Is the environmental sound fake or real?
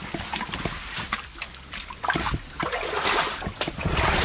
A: real